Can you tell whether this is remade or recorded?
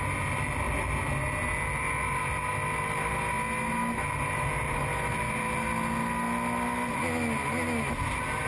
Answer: recorded